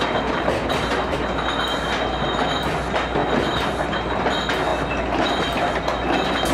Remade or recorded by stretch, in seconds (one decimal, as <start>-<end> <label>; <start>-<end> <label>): 0.0-6.5 recorded